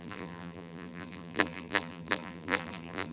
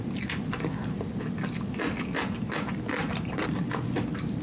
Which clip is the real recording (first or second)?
second